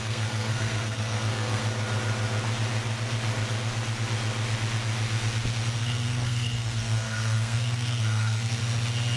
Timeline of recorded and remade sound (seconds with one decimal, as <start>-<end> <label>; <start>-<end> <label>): 0.0-1.6 remade; 1.6-5.8 recorded; 5.8-8.6 remade; 8.6-9.2 recorded